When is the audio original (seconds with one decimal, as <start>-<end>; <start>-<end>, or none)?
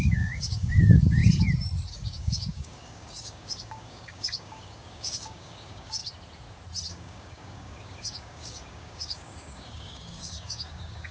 1.2-1.9; 6.0-6.9